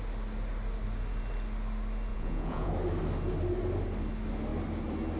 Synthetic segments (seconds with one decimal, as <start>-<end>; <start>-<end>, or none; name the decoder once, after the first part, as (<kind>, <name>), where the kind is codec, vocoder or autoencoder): 2.1-2.7 (vocoder, Vocos)